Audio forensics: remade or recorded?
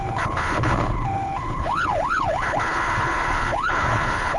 remade